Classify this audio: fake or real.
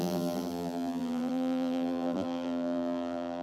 fake